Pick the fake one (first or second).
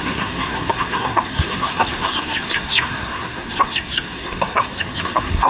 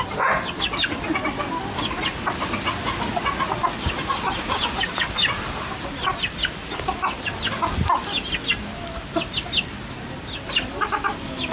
first